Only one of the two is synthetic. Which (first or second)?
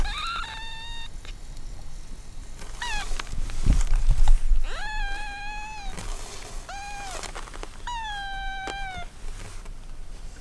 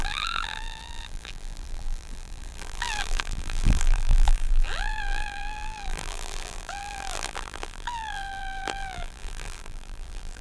second